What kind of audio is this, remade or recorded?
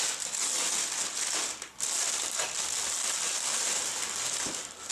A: recorded